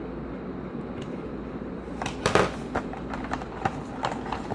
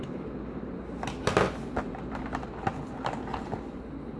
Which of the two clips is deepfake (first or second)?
first